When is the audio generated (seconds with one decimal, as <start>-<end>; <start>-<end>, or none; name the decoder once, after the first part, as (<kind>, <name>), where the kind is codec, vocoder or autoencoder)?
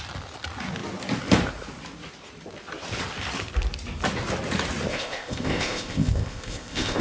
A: 4.9-7.0 (codec, ZipCodec)